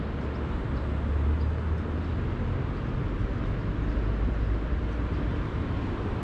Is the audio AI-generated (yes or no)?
no